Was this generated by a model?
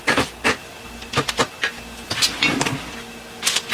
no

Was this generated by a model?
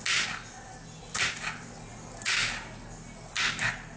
no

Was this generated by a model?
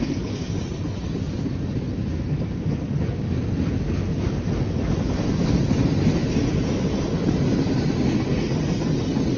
no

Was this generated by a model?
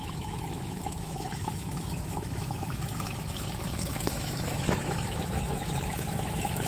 yes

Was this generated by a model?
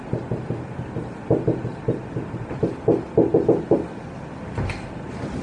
no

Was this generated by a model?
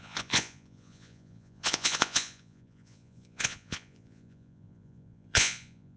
yes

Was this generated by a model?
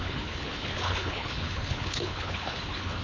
yes